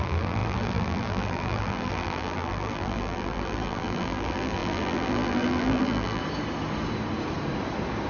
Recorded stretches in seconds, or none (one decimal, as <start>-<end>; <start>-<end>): 6.2-8.1